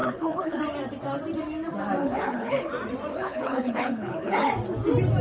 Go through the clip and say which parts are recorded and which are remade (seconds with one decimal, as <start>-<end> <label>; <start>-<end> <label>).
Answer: 0.0-0.6 remade; 0.6-2.0 recorded; 2.0-2.7 remade; 2.7-3.1 recorded; 3.1-4.5 remade; 4.5-5.2 recorded